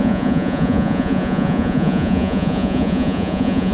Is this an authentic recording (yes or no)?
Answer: no